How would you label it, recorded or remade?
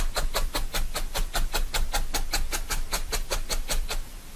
recorded